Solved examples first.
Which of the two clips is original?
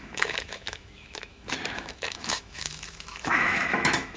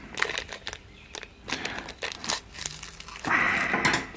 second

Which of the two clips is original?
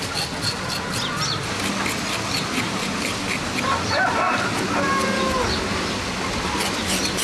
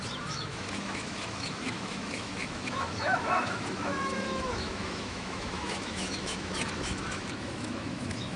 first